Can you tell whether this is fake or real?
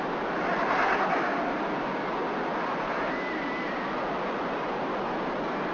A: real